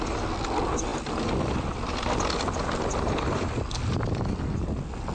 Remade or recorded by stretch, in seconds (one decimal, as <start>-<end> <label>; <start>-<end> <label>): 0.0-5.1 recorded